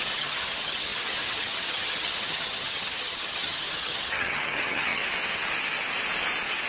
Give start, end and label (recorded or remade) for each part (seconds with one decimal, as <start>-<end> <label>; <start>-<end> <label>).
0.0-5.0 remade; 5.0-6.7 recorded